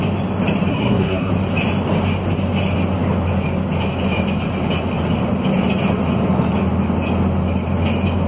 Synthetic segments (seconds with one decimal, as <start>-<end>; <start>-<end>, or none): 0.7-1.3